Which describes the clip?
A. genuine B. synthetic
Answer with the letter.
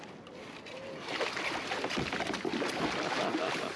A